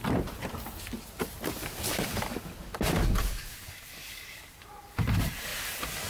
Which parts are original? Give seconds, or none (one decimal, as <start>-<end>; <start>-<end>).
0.0-1.6; 4.5-6.1

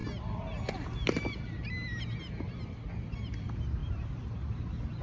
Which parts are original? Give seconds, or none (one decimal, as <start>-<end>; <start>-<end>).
0.0-5.0